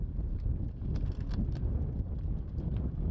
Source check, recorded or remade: recorded